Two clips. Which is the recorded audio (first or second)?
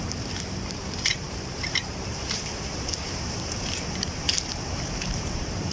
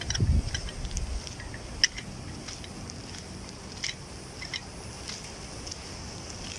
second